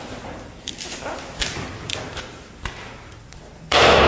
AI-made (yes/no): yes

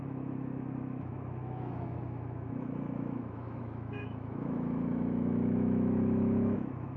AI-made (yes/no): yes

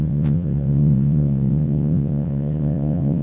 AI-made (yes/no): yes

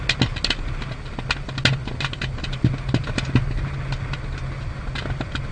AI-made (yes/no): no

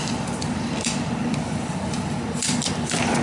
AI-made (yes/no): yes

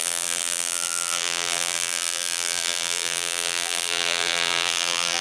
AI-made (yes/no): yes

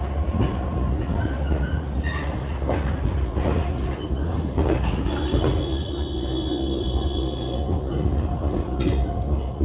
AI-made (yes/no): yes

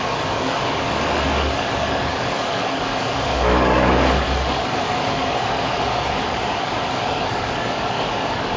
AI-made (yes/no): yes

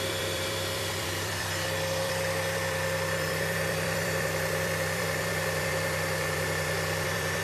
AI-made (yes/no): yes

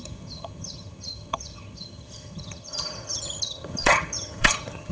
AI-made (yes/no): yes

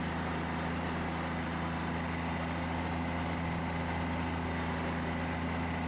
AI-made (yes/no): no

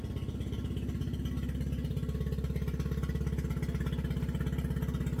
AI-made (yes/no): no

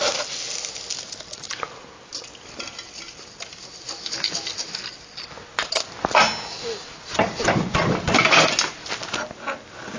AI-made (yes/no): no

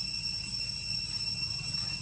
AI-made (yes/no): no